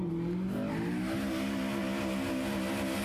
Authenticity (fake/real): real